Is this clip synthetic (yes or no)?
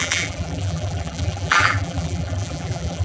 yes